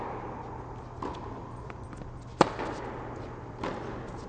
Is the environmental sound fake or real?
real